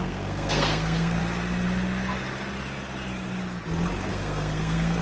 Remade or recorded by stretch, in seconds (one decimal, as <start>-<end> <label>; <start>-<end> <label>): 0.0-1.2 remade; 1.2-4.1 recorded; 4.1-5.0 remade